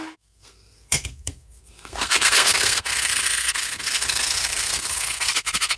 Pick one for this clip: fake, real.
fake